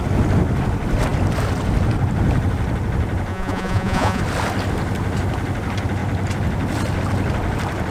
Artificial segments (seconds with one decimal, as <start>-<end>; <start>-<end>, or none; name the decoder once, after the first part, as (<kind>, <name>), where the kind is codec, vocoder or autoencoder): 3.3-4.2 (vocoder, Vocos)